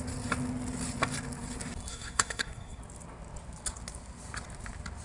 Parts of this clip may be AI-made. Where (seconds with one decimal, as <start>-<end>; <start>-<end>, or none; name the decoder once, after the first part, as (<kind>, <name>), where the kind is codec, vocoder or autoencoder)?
1.9-2.8 (codec, SNAC)